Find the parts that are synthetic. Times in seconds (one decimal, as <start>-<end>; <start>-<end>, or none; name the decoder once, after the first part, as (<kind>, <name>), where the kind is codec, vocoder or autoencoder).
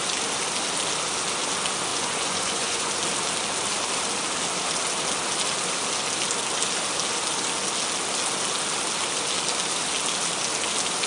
1.9-2.9 (vocoder, Vocos)